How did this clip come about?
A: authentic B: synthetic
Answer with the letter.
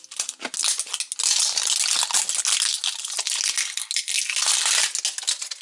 A